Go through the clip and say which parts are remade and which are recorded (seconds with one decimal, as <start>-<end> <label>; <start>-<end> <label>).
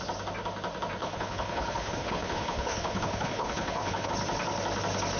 0.0-1.0 recorded; 1.0-4.1 remade; 4.1-5.2 recorded